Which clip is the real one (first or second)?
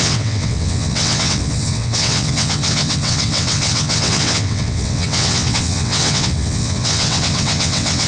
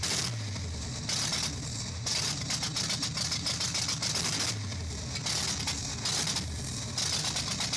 second